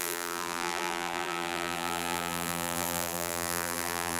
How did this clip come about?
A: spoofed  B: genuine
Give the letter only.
A